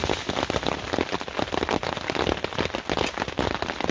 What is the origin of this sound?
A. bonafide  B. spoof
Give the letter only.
A